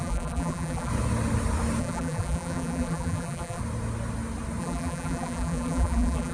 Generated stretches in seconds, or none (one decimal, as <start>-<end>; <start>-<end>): 0.0-0.9; 1.8-3.6; 4.6-6.3